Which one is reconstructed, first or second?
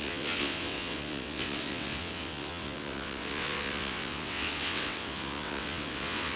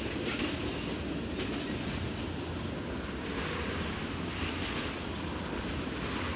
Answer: first